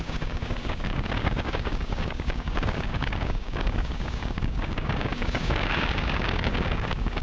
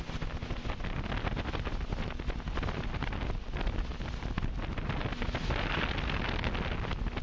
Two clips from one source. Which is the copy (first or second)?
first